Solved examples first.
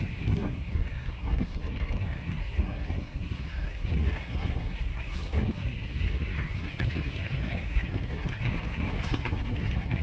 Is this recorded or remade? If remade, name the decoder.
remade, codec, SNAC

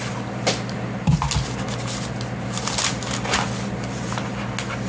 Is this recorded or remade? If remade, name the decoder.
recorded